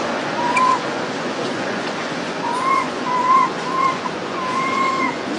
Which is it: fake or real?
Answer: fake